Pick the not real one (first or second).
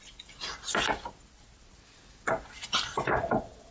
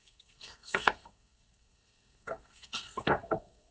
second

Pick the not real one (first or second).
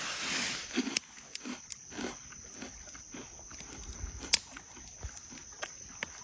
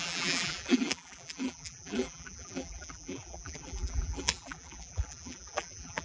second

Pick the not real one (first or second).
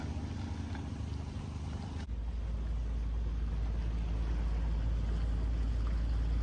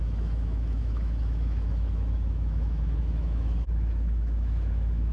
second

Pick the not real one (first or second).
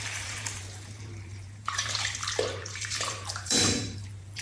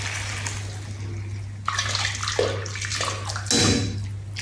first